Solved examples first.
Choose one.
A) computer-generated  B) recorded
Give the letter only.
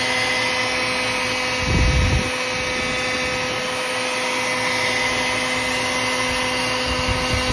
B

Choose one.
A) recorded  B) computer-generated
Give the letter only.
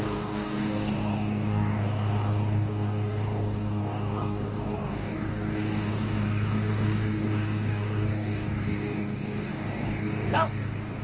B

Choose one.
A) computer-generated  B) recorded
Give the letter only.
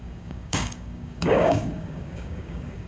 A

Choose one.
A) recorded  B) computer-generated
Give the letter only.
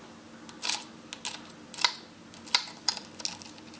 A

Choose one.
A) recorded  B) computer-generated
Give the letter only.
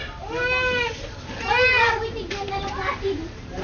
A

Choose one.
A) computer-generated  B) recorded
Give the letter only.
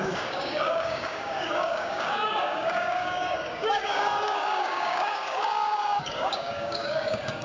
A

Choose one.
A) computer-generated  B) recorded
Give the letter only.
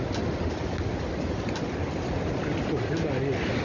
B